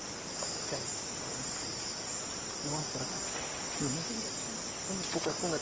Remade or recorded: recorded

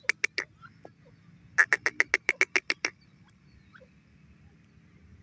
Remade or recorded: recorded